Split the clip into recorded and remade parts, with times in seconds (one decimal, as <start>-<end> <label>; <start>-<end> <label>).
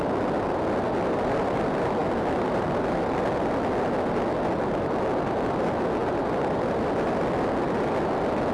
0.0-8.5 recorded